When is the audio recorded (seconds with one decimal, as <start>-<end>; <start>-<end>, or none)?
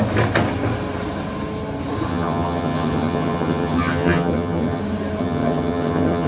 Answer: 0.0-2.1; 4.8-5.2